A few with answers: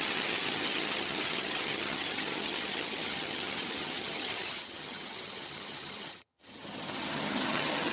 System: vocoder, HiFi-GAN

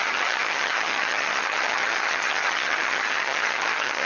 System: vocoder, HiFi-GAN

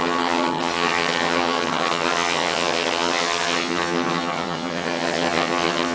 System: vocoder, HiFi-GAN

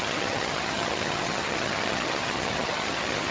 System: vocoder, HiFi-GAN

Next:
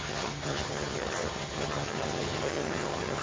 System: vocoder, HiFi-GAN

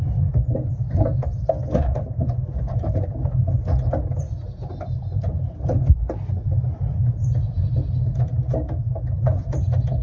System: none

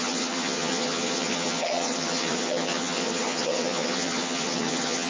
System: vocoder, HiFi-GAN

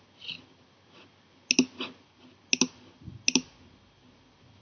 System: none